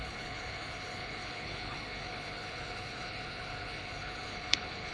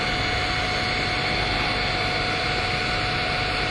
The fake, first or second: first